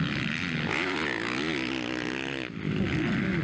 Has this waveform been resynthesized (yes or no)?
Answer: no